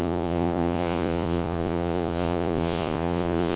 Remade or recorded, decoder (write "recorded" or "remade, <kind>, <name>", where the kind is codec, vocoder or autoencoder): remade, vocoder, Vocos